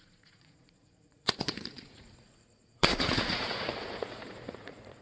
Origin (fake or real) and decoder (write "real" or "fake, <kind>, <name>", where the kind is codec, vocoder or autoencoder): fake, vocoder, Vocos